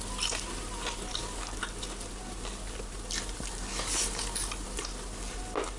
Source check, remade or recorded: recorded